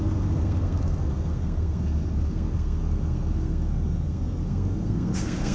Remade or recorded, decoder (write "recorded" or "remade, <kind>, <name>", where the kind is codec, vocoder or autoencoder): remade, codec, SNAC